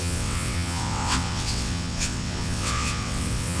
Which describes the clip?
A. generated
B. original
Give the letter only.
A